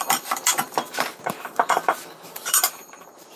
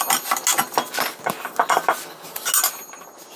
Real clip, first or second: second